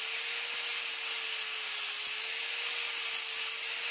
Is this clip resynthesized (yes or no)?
no